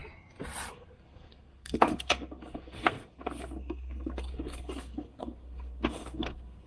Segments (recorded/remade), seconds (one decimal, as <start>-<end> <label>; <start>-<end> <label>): 0.0-0.7 recorded; 0.7-6.7 remade

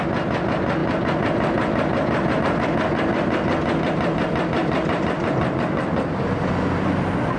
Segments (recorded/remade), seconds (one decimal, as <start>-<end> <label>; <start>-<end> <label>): 0.0-0.8 recorded; 0.8-2.4 remade; 2.4-4.6 recorded; 4.6-6.5 remade; 6.5-7.4 recorded

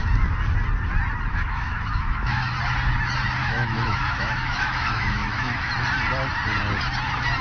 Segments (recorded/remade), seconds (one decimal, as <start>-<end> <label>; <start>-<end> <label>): 0.0-1.3 recorded; 1.3-2.5 remade; 2.5-3.4 recorded; 3.4-5.7 remade; 5.7-7.4 recorded

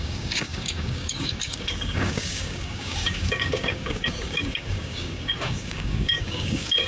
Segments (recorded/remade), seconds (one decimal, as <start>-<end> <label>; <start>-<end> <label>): 0.0-6.9 remade

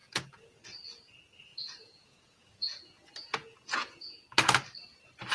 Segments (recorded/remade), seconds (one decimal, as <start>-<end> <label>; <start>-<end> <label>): 0.0-0.6 remade; 0.6-1.5 recorded; 1.5-4.2 remade; 4.2-5.3 recorded

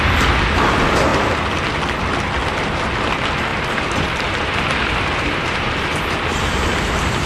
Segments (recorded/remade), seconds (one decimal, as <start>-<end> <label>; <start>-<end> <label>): 0.0-3.5 recorded; 3.5-7.3 remade